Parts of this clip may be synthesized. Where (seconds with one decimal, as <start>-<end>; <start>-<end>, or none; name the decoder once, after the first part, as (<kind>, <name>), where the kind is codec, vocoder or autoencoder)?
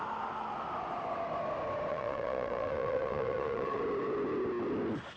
1.9-3.8 (vocoder, Vocos)